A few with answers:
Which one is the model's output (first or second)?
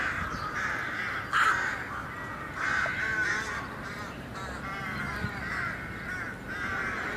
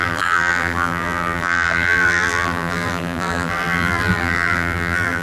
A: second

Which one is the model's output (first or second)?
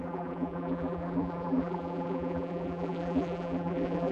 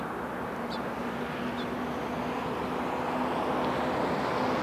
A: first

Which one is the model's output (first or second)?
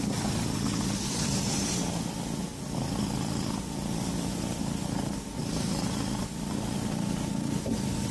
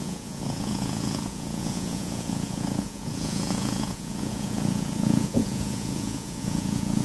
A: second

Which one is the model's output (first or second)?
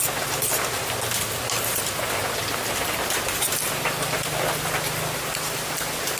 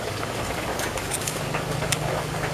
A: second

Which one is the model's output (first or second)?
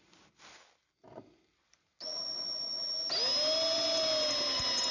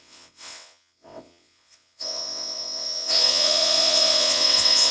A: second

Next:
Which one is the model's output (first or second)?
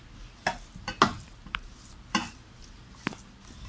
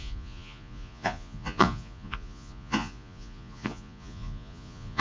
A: second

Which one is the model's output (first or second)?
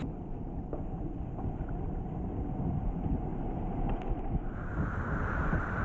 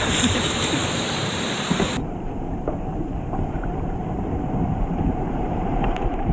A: second